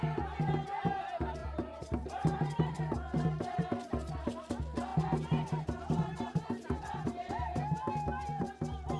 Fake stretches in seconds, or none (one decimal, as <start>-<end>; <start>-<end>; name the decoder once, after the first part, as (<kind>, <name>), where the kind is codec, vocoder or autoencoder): 1.4-2.8 (vocoder, BigVGAN v2); 4.9-8.5